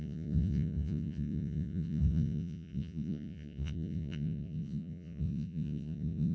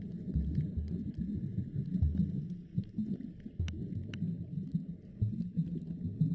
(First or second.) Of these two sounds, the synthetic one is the first